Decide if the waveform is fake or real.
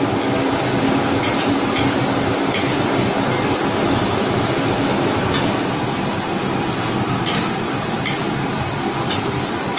real